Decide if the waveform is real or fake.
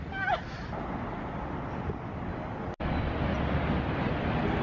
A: real